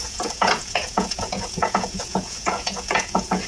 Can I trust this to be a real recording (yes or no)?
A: no